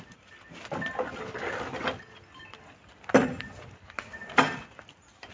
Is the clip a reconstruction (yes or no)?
no